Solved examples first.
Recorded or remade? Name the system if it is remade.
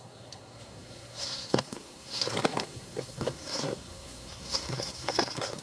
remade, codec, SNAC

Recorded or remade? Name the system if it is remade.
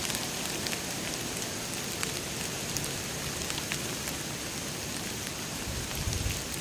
recorded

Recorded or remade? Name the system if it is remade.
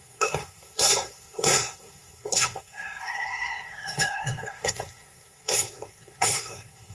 remade, codec, SNAC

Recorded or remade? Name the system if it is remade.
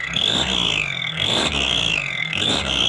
remade, codec, SNAC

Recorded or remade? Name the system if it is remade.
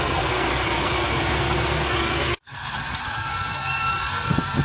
remade, codec, SNAC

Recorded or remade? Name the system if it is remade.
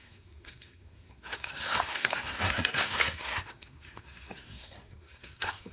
remade, codec, SNAC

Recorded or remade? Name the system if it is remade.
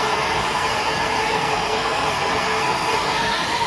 remade, codec, SNAC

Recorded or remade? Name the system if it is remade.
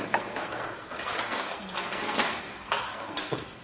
remade, codec, SNAC